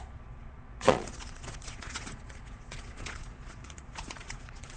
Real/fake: fake